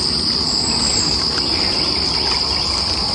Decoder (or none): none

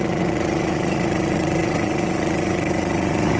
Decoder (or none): vocoder, Vocos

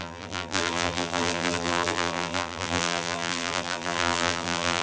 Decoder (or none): vocoder, BigVGAN v2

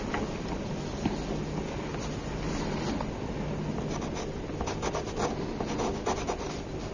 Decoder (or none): none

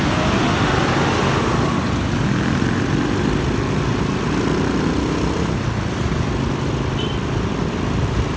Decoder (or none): none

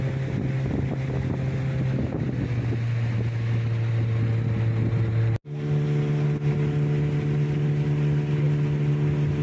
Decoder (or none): none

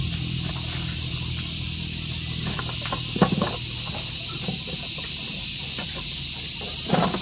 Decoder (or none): none